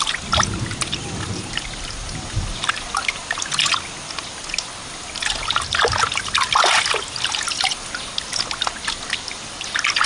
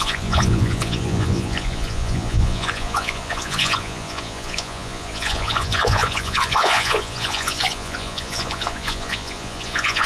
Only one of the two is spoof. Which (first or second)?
second